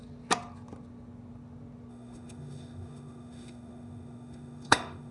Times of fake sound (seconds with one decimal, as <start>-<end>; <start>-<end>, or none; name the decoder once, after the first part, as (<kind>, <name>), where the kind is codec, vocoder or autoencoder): 1.9-5.1 (autoencoder, DAC-VAE)